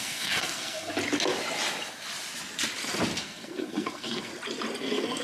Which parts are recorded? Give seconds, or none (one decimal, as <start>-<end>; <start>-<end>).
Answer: 0.9-3.2; 4.3-4.8